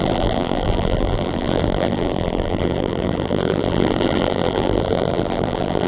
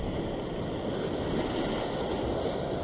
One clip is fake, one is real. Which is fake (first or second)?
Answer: first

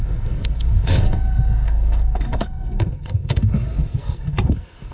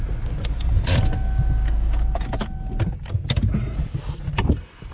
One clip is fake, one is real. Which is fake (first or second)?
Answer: first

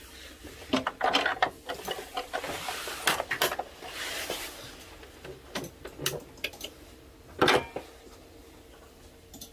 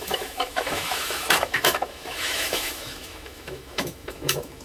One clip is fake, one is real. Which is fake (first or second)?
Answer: second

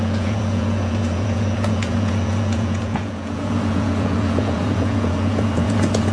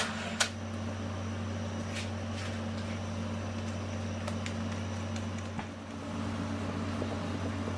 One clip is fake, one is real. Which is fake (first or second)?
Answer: first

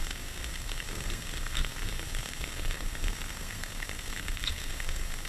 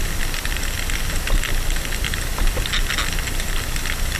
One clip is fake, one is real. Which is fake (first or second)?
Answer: first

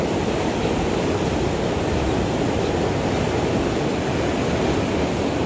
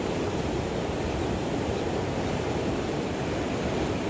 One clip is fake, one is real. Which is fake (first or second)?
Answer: second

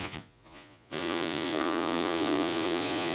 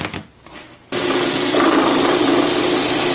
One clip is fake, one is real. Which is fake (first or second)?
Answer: first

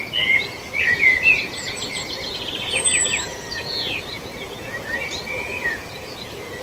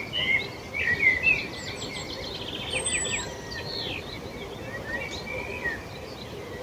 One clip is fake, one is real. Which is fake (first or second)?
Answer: first